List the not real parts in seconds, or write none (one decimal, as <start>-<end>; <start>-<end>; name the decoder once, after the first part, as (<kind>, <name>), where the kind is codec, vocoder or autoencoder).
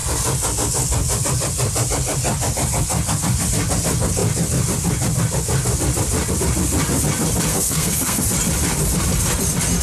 7.5-8.2 (codec, SNAC)